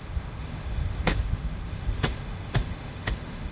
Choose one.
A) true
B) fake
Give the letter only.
B